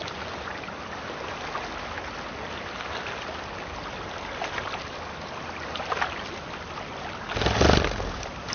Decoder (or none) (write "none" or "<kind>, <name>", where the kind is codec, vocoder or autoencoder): none